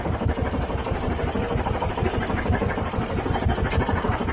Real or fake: fake